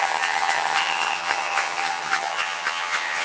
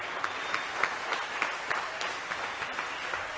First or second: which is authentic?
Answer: second